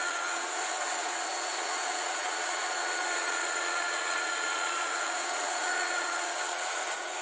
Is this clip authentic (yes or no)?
no